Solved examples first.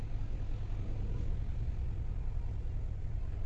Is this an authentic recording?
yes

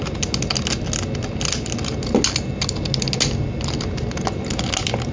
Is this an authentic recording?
yes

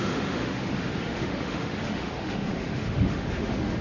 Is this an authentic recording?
no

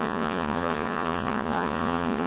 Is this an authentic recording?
no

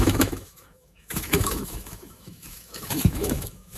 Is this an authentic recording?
no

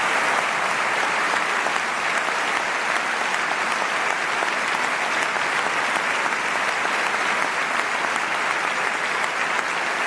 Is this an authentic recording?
yes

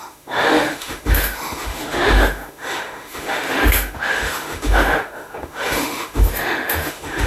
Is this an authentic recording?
no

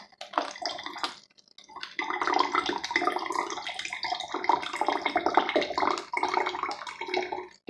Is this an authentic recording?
yes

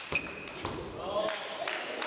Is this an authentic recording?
no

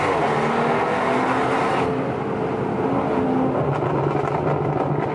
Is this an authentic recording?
yes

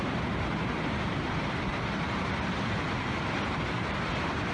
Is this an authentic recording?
no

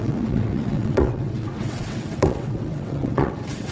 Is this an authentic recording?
no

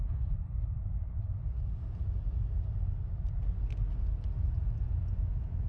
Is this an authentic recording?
yes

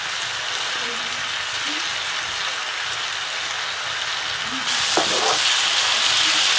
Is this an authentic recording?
yes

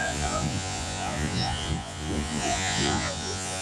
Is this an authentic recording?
no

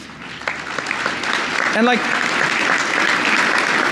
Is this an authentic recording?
yes